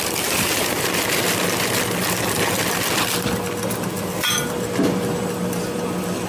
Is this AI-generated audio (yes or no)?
no